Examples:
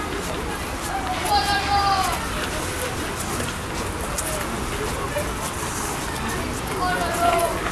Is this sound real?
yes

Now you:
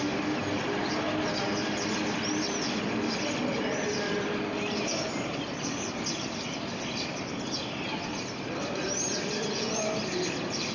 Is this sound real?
yes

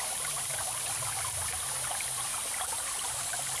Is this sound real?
no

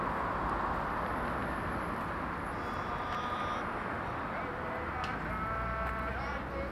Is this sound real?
yes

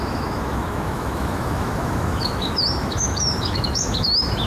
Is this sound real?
no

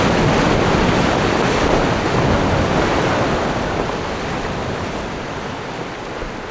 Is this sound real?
yes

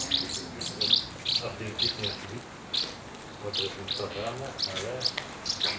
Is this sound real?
yes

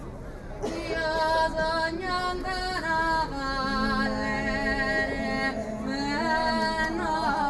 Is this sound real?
yes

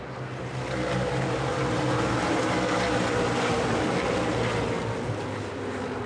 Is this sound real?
yes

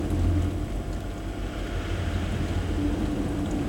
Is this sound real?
yes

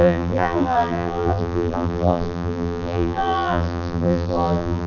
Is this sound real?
no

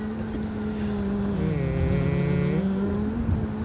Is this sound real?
yes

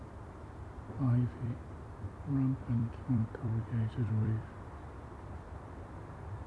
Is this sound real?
no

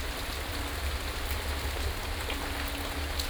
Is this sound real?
yes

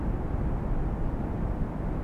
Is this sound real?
yes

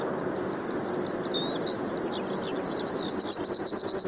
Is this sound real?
yes